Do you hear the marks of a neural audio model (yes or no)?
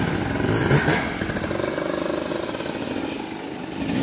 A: no